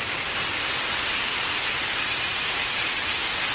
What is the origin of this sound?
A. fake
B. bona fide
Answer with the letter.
B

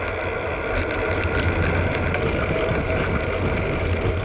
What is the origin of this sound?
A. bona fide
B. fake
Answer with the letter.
A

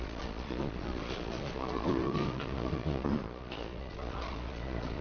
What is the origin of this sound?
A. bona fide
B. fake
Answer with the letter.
B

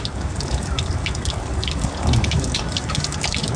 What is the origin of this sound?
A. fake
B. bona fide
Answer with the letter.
A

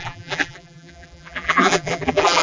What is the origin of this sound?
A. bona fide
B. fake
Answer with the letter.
B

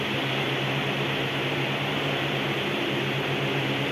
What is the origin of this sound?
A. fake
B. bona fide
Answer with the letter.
B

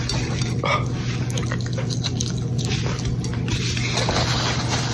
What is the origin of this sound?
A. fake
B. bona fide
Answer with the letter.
B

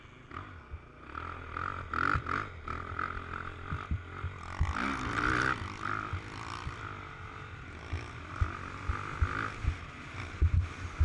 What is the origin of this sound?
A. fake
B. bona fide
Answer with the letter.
B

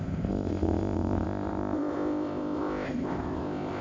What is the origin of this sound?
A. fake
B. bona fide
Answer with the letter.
A